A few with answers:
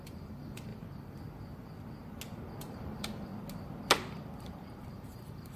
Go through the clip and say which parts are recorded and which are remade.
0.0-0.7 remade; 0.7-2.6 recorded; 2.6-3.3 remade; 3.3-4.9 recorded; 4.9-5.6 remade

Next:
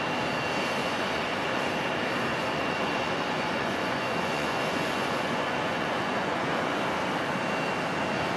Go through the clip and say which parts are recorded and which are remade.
0.0-0.8 recorded; 0.8-1.7 remade; 1.7-2.3 recorded; 2.3-6.8 remade; 6.8-8.4 recorded

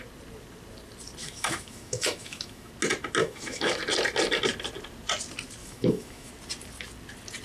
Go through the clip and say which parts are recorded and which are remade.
0.0-1.2 recorded; 1.2-2.7 remade; 2.7-3.2 recorded; 3.2-3.8 remade; 3.8-5.6 recorded; 5.6-6.3 remade; 6.3-7.4 recorded